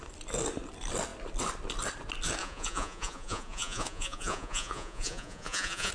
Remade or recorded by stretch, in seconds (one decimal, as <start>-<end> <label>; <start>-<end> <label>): 0.0-2.4 recorded; 2.4-5.9 remade